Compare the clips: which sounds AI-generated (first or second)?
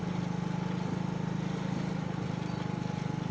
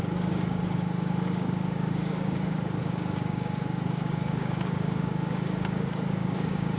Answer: second